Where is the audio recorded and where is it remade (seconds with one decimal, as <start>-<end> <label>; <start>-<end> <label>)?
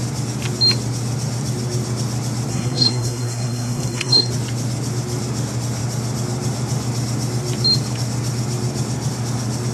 0.0-2.5 recorded; 2.5-4.3 remade; 4.3-9.7 recorded